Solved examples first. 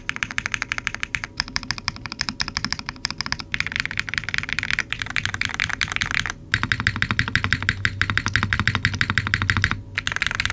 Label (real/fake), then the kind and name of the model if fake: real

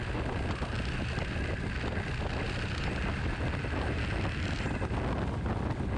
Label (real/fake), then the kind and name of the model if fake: real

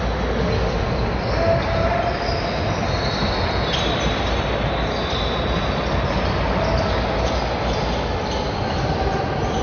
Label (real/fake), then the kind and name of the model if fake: real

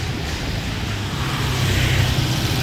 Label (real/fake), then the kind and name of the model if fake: real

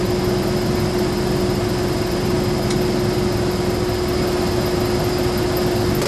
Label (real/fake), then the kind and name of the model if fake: real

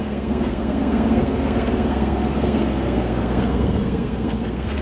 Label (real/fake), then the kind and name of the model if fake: fake, codec, SNAC